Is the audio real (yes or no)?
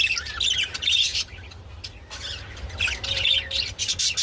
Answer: yes